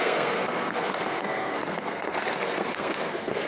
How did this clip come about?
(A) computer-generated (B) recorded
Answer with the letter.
A